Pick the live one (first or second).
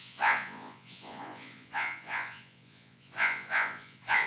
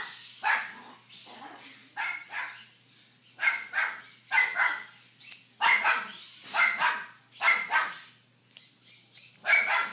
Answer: second